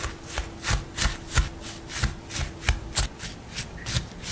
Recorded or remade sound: recorded